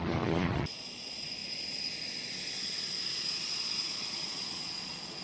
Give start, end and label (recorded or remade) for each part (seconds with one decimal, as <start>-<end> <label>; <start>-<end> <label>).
0.0-5.2 remade